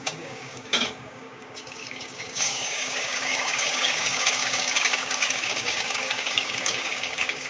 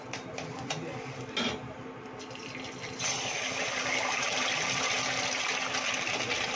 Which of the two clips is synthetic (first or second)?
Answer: first